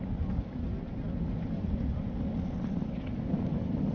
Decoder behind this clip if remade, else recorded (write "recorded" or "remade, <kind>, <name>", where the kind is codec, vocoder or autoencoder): recorded